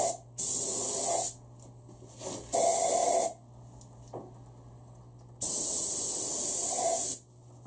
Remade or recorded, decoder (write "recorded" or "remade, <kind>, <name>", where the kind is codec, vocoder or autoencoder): recorded